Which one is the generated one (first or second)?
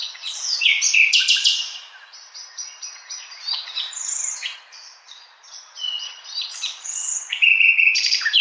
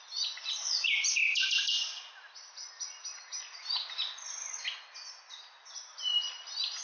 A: first